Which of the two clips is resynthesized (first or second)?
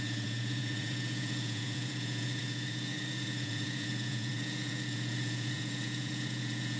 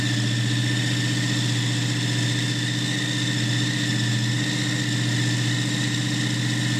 first